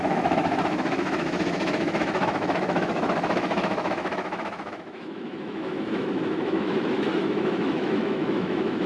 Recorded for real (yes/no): no